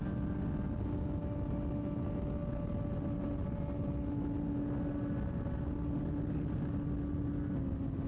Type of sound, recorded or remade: recorded